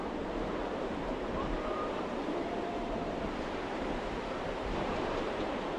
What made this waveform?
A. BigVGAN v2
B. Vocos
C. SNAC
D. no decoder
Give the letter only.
A